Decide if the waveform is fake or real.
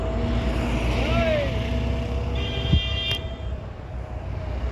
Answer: real